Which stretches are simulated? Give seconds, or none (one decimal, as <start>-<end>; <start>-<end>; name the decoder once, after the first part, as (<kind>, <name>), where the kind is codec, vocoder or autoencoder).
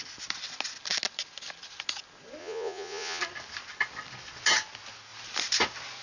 2.4-3.2 (vocoder, Vocos)